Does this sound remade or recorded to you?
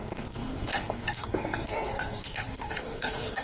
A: remade